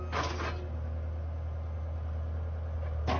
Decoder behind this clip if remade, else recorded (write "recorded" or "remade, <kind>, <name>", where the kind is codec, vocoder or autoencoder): recorded